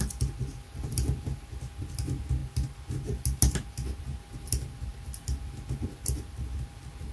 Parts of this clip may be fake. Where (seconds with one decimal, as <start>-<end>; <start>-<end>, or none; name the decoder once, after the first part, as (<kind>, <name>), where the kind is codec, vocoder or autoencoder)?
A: 0.5-1.5 (vocoder, BigVGAN v2)